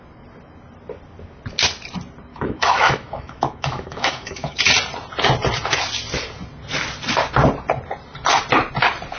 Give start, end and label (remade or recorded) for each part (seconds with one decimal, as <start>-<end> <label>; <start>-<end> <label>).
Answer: 0.0-2.3 recorded; 2.3-4.6 remade; 4.6-9.2 recorded